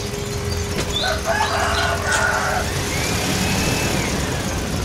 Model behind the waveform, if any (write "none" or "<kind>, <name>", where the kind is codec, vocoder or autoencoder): none